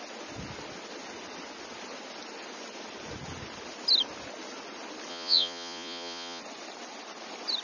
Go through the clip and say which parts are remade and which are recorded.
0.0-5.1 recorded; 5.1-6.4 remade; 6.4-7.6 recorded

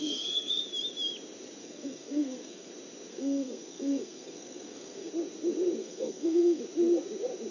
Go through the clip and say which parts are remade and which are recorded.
0.0-0.6 remade; 0.6-1.6 recorded; 1.6-2.7 remade; 2.7-3.1 recorded; 3.1-5.1 remade; 5.1-5.8 recorded; 5.8-6.6 remade; 6.6-7.5 recorded

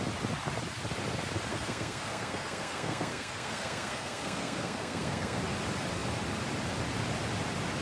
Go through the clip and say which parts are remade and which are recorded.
0.0-1.5 recorded; 1.5-5.4 remade; 5.4-7.8 recorded